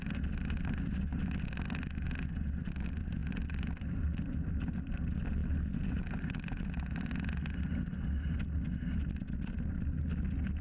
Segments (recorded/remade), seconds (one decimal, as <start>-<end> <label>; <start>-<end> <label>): 0.0-10.6 recorded